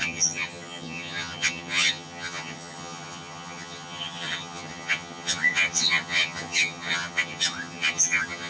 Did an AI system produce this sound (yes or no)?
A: yes